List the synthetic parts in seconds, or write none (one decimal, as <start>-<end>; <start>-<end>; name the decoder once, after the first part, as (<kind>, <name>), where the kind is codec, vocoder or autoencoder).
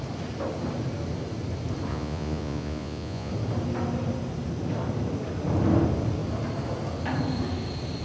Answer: 1.9-3.3 (vocoder, Vocos)